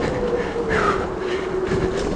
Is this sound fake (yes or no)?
no